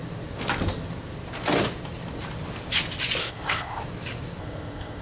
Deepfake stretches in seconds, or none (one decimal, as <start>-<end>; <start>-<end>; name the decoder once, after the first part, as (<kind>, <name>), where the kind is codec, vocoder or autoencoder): 3.2-3.8 (codec, ZipCodec); 4.4-5.0